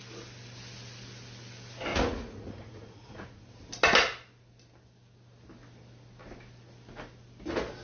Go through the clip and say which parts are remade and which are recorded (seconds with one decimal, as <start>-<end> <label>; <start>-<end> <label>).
0.0-1.9 recorded; 1.9-3.4 remade; 3.4-7.8 recorded